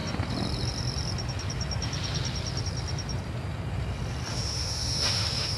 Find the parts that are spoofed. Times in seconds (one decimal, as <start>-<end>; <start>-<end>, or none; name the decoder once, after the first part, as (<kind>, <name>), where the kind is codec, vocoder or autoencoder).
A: 4.3-5.6 (autoencoder, DAC-VAE)